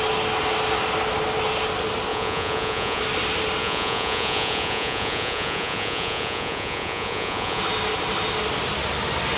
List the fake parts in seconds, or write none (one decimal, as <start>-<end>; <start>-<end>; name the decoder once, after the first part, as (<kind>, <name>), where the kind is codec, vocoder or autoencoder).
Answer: 2.1-3.0 (vocoder, Vocos); 3.6-7.6